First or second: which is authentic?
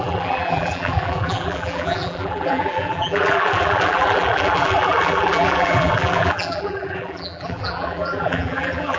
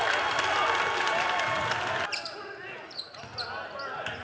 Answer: second